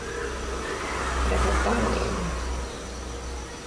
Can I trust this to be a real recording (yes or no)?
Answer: yes